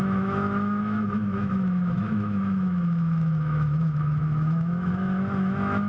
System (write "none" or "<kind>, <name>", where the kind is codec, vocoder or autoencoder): autoencoder, DAC-VAE